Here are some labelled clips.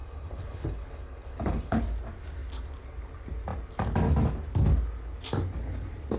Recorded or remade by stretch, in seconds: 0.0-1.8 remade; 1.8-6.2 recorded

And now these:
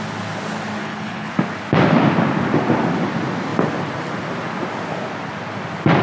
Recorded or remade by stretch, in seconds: 0.0-0.8 recorded; 0.8-1.3 remade; 1.3-6.0 recorded

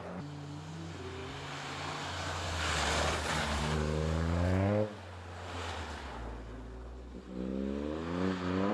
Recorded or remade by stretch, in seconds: 0.0-8.7 recorded

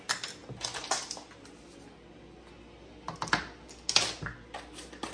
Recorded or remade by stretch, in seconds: 0.0-5.1 recorded

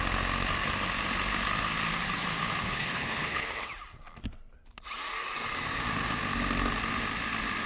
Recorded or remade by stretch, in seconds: 0.0-2.6 recorded; 2.6-3.7 remade; 3.7-7.7 recorded